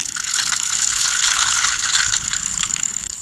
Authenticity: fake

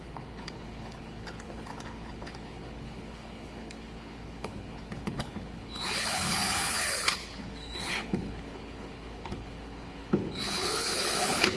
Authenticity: fake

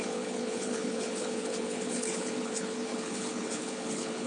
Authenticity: fake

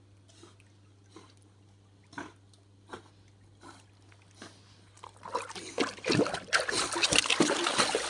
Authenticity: real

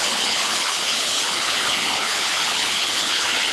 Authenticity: fake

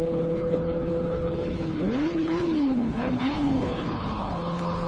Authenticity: fake